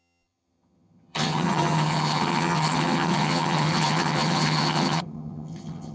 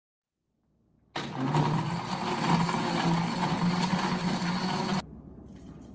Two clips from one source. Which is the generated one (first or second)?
first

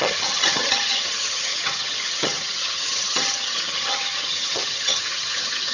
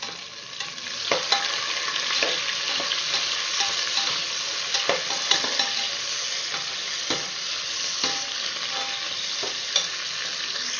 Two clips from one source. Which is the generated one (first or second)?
first